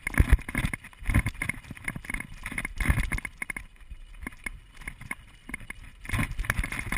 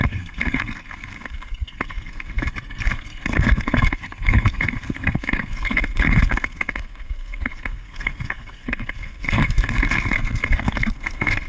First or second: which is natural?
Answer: first